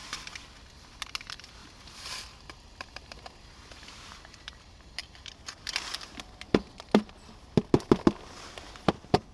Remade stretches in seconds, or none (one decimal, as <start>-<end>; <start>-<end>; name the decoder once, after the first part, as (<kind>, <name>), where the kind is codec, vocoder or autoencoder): 1.6-4.6 (vocoder, BigVGAN v2)